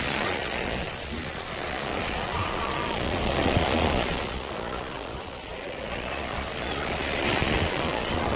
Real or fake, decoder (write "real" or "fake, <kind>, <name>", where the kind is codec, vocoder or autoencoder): fake, vocoder, Vocos